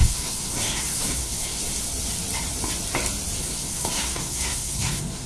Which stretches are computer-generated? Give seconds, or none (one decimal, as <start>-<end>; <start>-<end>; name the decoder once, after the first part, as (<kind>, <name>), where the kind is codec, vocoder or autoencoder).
0.0-1.6 (codec, SNAC); 3.4-5.3

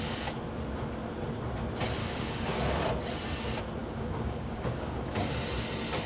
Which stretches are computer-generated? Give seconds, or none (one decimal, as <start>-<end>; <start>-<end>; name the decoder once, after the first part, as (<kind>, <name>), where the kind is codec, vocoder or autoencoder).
2.0-2.6 (codec, DAC); 3.8-5.3

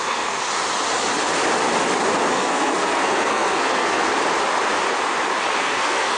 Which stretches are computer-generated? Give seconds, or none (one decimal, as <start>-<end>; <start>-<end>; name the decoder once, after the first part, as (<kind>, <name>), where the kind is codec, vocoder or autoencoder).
0.0-0.4 (codec, SNAC); 2.3-4.1; 5.6-6.2

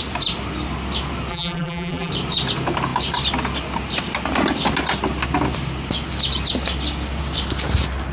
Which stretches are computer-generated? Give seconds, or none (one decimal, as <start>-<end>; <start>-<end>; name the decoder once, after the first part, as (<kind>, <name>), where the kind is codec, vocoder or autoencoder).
1.3-2.1 (vocoder, BigVGAN v2)

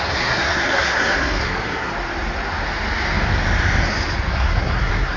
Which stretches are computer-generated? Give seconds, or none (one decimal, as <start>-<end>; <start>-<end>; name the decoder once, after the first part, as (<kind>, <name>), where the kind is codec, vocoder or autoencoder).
0.0-1.9 (codec, SNAC); 4.3-5.2

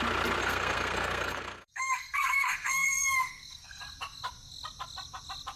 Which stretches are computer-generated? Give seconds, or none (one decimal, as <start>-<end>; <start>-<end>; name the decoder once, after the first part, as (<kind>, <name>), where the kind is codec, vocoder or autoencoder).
0.4-3.8 (codec, SNAC)